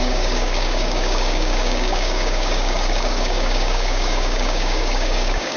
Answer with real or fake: fake